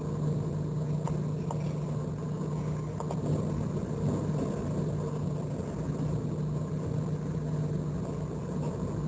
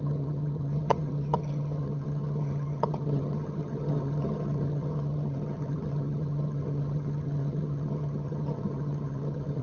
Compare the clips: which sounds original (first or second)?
first